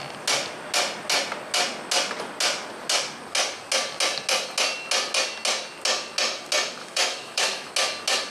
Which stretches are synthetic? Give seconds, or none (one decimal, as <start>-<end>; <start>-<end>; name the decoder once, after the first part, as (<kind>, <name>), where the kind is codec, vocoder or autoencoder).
6.8-7.7 (autoencoder, DAC-VAE)